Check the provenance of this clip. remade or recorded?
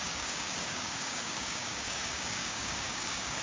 remade